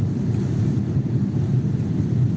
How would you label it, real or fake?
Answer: fake